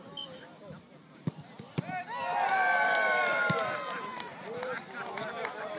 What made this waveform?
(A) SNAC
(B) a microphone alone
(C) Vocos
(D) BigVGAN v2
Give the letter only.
D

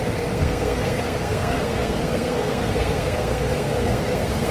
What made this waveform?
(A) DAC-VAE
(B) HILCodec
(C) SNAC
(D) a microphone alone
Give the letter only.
C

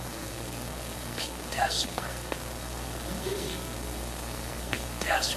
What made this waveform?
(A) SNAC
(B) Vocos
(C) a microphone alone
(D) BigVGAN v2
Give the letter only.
A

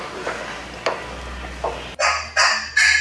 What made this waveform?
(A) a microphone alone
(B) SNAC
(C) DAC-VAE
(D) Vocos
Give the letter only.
A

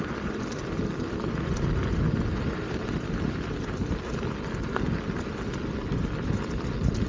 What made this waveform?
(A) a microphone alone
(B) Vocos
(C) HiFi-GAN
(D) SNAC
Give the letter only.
A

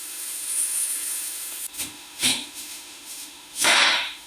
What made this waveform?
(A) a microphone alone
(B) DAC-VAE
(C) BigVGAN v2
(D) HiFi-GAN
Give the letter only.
B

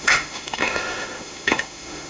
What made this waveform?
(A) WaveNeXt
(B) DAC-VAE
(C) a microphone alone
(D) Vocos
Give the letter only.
B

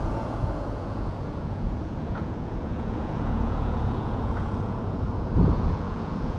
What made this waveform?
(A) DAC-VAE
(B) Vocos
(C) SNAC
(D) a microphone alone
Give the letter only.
B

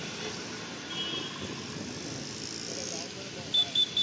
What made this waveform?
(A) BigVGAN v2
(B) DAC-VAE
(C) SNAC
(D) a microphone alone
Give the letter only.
D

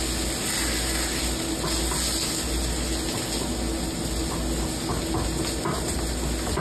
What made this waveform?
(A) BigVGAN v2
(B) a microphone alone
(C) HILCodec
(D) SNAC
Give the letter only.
B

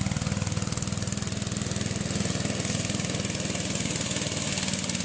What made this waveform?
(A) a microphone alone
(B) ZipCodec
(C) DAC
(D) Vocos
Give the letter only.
A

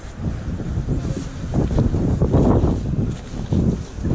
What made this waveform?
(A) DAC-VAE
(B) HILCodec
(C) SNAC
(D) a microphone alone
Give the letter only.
D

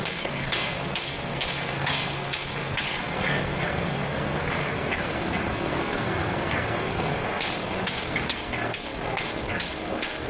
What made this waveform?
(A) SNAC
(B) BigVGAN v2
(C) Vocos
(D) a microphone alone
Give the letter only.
A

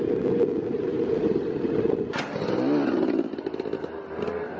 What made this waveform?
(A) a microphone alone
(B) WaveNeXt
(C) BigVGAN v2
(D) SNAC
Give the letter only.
A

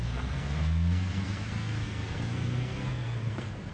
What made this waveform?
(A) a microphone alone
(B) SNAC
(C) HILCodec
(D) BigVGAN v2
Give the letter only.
B